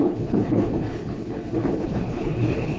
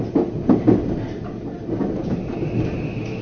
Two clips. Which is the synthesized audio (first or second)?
first